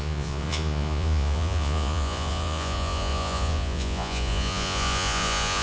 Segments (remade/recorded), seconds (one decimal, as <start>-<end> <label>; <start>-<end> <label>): 0.0-5.6 remade